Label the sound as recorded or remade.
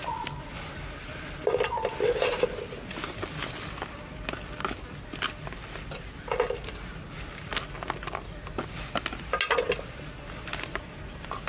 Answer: recorded